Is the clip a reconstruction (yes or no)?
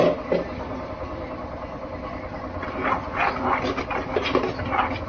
no